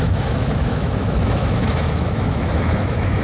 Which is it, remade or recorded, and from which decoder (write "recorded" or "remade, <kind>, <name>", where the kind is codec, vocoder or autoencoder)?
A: remade, autoencoder, DAC-VAE